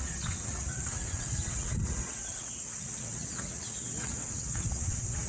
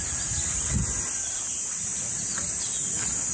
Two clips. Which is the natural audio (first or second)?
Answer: second